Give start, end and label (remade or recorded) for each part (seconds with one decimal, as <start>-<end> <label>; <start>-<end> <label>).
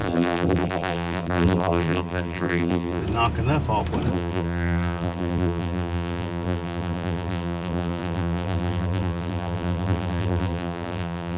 0.0-3.0 remade; 3.0-4.1 recorded; 4.1-11.4 remade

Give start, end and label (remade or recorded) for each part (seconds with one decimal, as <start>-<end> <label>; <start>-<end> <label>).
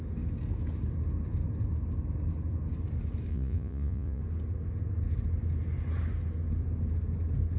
0.0-3.3 recorded; 3.3-4.2 remade; 4.2-7.6 recorded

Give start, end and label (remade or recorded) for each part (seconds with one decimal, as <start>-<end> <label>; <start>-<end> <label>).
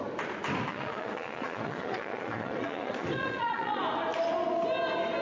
0.0-0.7 recorded; 0.7-3.8 remade; 3.8-5.2 recorded